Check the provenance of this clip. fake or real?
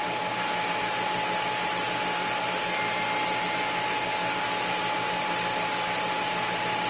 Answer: real